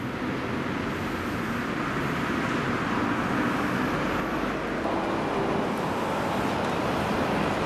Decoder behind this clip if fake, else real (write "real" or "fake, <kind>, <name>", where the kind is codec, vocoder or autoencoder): real